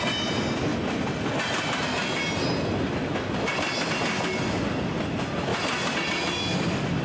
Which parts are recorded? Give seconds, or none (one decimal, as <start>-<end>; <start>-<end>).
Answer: 0.0-7.0